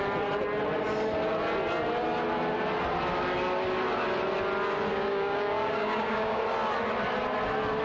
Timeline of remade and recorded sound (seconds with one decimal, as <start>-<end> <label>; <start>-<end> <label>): 0.0-4.9 recorded; 4.9-6.4 remade; 6.4-7.8 recorded